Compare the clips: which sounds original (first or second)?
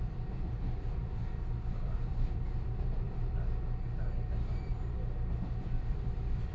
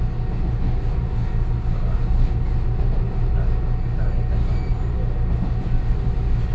second